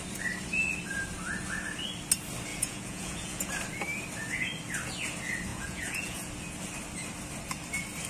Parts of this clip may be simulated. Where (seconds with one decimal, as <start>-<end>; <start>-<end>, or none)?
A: 2.5-3.5; 5.5-6.3